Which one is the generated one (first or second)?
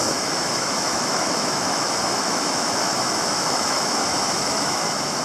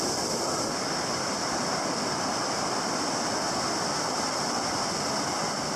first